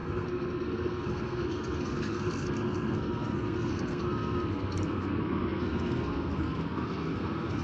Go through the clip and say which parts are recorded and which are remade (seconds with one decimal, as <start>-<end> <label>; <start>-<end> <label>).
0.0-7.6 remade